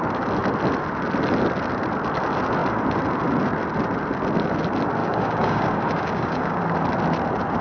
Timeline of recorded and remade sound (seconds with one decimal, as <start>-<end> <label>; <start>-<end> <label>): 0.0-5.0 recorded; 5.0-6.6 remade; 6.6-7.6 recorded

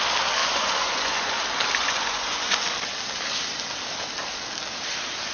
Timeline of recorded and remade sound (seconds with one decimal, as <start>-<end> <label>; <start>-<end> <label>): 0.0-0.4 recorded; 0.4-1.4 remade; 1.4-1.8 recorded; 1.8-2.6 remade; 2.6-5.3 recorded

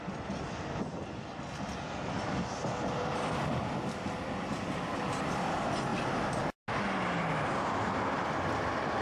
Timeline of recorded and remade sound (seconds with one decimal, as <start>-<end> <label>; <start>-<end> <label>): 0.0-9.0 recorded